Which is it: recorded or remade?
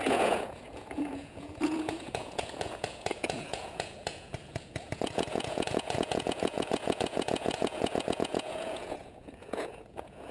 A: remade